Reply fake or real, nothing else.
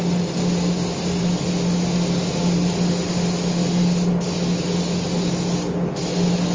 real